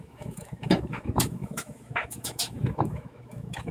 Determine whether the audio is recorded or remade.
remade